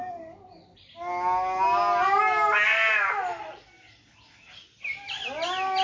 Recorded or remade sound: recorded